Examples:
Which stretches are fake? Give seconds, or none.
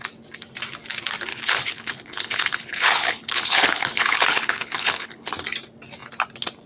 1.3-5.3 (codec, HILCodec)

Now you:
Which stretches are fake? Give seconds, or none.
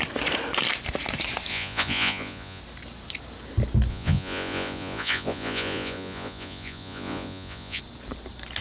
1.5-2.6 (vocoder, Vocos); 3.9-7.8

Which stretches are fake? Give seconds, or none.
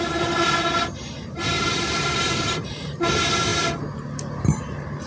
0.0-3.5 (vocoder, BigVGAN v2); 4.4-5.1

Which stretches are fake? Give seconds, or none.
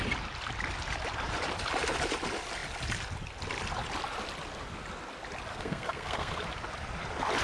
5.5-6.3 (codec, SNAC)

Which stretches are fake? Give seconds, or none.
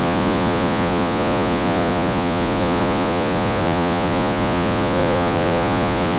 0.0-6.2 (vocoder, Vocos)